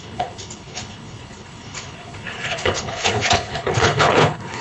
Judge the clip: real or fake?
fake